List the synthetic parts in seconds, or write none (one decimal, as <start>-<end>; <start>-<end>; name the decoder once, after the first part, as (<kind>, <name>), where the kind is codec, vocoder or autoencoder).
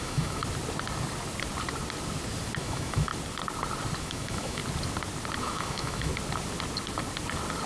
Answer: 0.0-0.4 (autoencoder, DAC-VAE); 2.6-3.1; 4.0-4.6; 5.4-6.1